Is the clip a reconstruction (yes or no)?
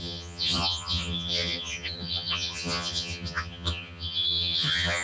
yes